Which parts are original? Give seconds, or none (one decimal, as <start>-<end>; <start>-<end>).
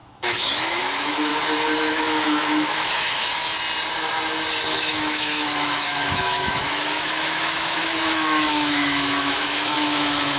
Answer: 1.3-1.9; 3.3-4.8